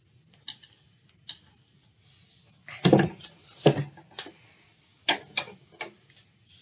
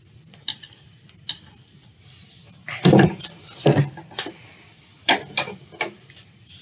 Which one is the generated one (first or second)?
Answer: second